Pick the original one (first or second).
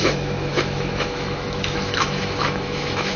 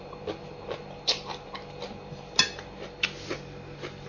second